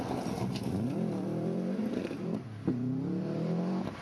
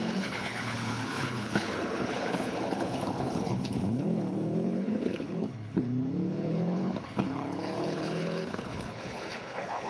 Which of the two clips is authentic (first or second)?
first